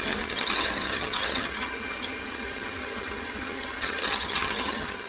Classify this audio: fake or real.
fake